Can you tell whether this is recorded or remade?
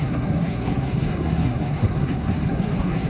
remade